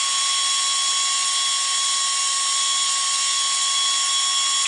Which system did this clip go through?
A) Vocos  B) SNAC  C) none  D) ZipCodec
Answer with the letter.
C